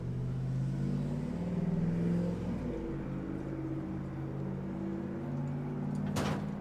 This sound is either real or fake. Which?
real